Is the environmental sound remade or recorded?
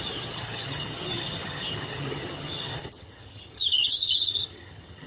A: remade